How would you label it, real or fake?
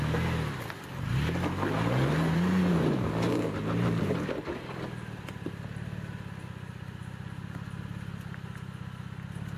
real